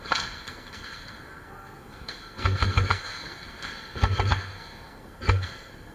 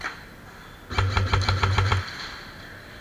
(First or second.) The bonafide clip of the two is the second